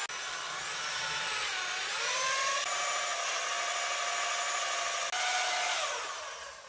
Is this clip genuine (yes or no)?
yes